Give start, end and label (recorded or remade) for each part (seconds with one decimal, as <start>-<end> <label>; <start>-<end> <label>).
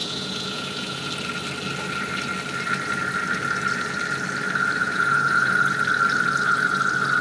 0.0-1.1 remade; 1.1-4.8 recorded; 4.8-5.5 remade; 5.5-7.2 recorded